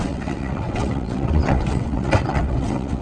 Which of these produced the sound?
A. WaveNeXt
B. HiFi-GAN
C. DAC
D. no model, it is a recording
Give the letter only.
A